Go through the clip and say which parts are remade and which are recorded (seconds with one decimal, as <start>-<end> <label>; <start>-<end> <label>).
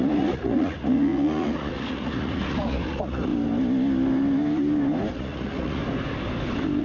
0.0-3.3 remade; 3.3-5.1 recorded; 5.1-5.8 remade; 5.8-6.8 recorded